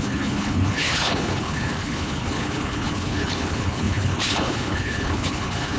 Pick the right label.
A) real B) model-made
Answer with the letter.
B